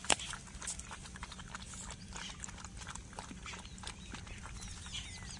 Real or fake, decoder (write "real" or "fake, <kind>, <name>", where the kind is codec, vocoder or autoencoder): real